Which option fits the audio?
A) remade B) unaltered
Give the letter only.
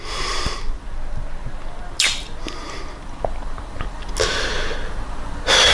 B